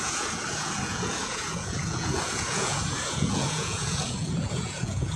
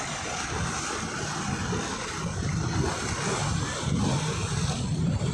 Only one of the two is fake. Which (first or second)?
first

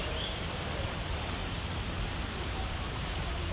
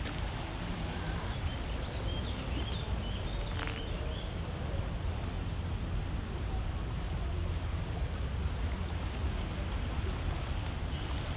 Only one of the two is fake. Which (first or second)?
first